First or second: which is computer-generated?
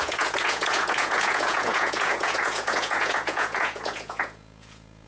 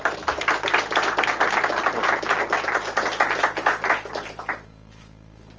first